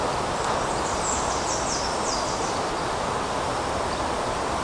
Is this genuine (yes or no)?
yes